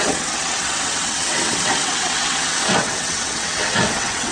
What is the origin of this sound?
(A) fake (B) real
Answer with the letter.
A